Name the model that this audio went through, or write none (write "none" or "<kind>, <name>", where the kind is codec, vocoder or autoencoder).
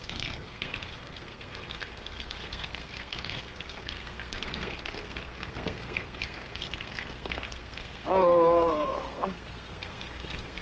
codec, SNAC